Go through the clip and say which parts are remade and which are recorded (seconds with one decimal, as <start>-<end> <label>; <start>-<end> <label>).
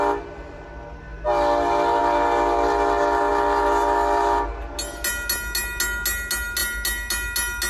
0.0-7.7 recorded